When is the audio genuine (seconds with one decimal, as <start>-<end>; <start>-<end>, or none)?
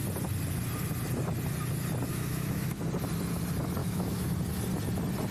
0.0-2.1; 2.8-3.8; 4.3-5.3